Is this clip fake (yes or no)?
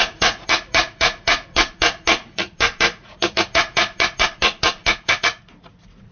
yes